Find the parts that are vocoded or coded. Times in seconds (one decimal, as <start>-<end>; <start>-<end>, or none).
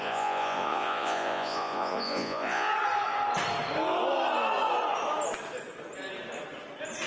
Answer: 0.0-2.7